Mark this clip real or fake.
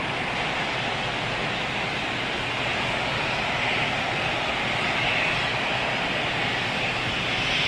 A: real